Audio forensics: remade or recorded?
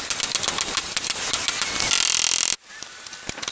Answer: recorded